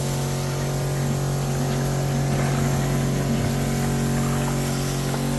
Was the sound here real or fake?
real